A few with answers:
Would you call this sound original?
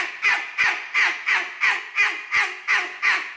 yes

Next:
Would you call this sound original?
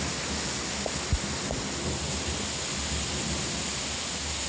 yes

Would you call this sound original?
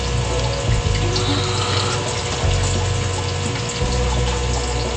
yes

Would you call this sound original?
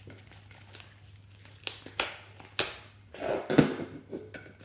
yes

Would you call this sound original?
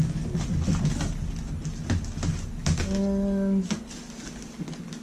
yes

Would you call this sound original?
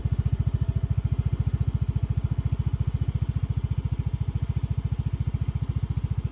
yes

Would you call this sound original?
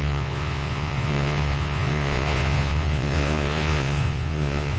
no